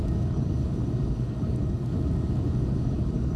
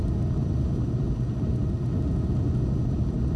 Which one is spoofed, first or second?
first